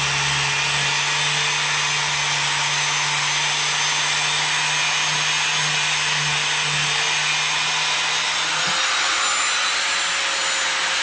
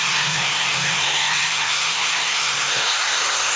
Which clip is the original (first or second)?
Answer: first